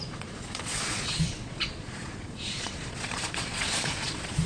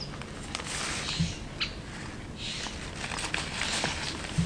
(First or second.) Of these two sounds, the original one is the second